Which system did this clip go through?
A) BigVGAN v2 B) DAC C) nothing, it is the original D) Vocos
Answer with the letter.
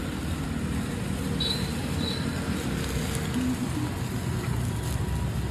C